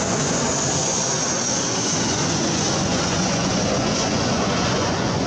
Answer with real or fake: fake